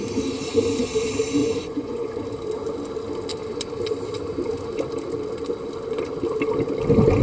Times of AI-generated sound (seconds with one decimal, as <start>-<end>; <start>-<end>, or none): 1.4-2.2